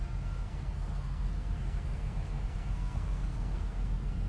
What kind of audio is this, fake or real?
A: fake